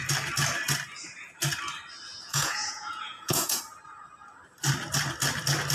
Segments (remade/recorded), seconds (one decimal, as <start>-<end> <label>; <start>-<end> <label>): 0.0-2.1 recorded; 2.1-3.6 remade; 3.6-5.7 recorded